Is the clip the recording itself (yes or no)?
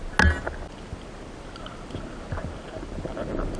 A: yes